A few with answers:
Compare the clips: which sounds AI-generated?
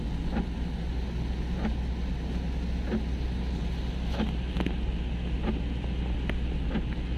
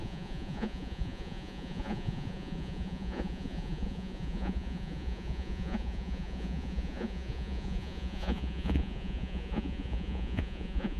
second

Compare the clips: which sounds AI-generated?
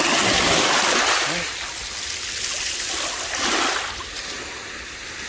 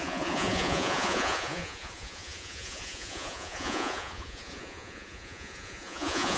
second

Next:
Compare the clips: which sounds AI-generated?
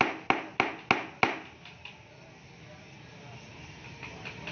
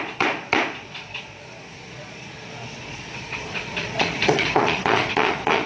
second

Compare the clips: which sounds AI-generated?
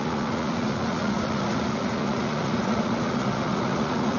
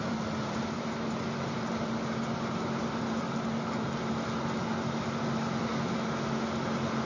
first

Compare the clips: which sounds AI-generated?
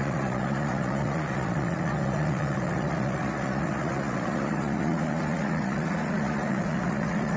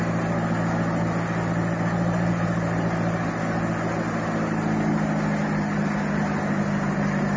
first